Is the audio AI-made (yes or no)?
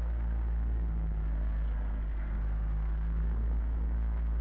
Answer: yes